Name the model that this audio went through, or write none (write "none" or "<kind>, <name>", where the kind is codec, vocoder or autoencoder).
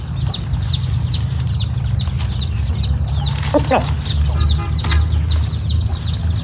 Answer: none